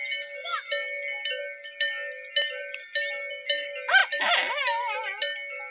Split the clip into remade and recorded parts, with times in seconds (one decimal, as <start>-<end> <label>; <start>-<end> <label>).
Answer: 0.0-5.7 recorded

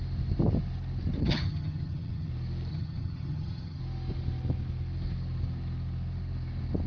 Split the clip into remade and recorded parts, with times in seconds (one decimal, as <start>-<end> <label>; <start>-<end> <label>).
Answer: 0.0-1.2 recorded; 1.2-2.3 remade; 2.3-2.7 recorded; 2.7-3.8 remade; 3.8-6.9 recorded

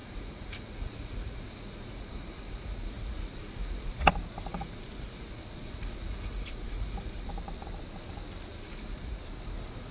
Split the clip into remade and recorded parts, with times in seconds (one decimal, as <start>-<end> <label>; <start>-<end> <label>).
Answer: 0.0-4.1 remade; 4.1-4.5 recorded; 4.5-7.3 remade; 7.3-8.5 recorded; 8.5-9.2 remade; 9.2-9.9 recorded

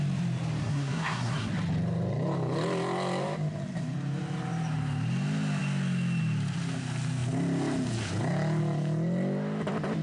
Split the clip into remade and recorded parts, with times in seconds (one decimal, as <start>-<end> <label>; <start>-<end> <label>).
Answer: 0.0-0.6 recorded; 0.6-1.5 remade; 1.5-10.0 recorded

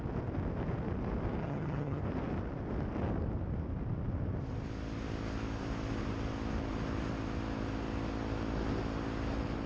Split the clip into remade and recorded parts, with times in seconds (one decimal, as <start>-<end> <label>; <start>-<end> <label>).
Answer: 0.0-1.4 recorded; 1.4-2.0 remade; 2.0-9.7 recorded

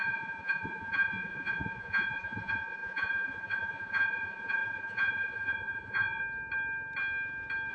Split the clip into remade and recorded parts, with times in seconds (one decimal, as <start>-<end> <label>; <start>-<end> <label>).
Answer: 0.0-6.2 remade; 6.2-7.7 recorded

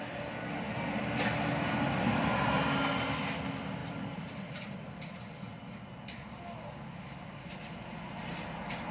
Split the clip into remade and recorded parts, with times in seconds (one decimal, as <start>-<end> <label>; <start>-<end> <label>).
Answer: 0.0-3.8 recorded; 3.8-4.6 remade; 4.6-8.9 recorded